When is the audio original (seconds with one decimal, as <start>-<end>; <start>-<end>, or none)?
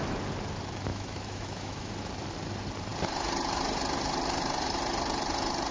0.0-0.9; 1.9-5.7